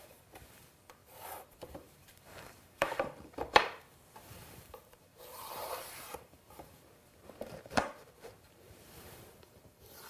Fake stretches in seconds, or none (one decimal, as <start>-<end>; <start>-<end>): 0.0-10.1

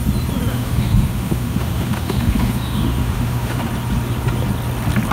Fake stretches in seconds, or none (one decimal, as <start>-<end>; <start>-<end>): 0.5-3.6